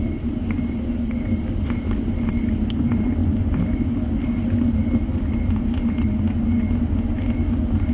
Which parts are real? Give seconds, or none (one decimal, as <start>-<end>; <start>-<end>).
0.0-7.9